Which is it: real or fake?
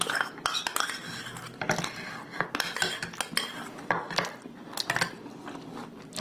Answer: real